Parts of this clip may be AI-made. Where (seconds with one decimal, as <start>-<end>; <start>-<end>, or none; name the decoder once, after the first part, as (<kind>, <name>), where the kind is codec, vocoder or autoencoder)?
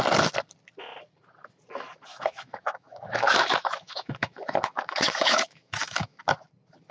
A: 2.1-6.2 (autoencoder, DAC-VAE)